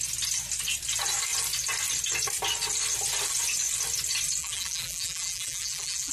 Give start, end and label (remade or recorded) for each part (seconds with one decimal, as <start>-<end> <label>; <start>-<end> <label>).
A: 0.0-4.4 recorded; 4.4-6.1 remade